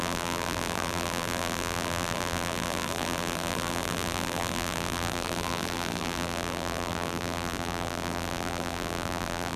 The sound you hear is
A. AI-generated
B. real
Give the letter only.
A